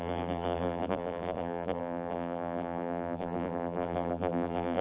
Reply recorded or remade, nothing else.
remade